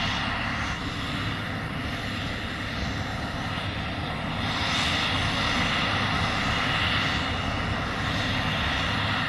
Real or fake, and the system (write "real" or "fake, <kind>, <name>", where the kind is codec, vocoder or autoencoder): real